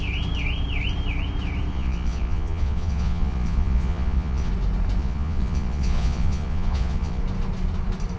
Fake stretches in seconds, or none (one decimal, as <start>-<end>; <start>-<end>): 1.7-4.5; 5.0-7.2